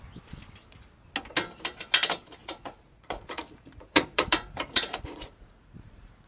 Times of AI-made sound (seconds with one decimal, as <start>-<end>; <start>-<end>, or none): 2.4-6.3